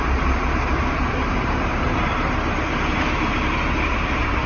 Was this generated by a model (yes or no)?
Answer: yes